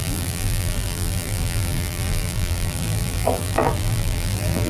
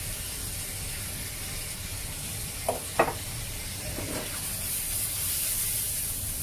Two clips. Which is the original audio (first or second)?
second